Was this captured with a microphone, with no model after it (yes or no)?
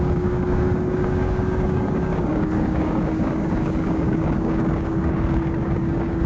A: no